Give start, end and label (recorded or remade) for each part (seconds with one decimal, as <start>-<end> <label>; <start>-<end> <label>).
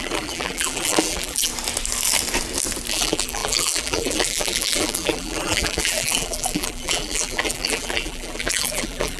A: 0.0-1.5 remade; 1.5-2.9 recorded; 2.9-9.2 remade